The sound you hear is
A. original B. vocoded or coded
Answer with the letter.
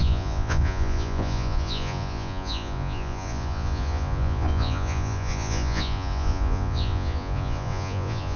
B